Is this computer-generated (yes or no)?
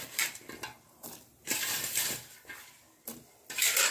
yes